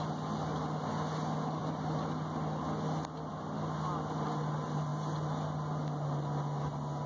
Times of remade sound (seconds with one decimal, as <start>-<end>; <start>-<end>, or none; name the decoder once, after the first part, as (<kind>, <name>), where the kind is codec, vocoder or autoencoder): none

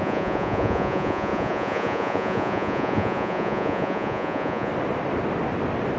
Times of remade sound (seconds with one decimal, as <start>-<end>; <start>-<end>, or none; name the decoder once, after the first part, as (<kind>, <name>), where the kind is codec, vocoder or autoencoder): 0.0-4.7 (vocoder, Vocos)

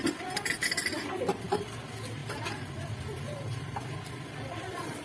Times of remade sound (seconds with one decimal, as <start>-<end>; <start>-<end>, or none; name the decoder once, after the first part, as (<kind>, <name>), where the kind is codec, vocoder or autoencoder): none